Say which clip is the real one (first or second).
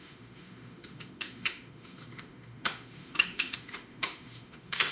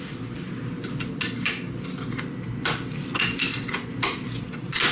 second